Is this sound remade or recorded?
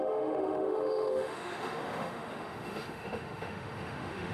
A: remade